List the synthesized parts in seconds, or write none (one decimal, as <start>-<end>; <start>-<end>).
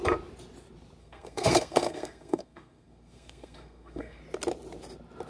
1.0-4.2